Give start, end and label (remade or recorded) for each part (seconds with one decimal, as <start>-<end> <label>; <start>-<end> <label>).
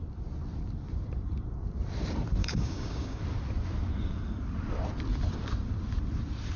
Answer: 0.0-2.4 recorded; 2.4-3.2 remade; 3.2-6.6 recorded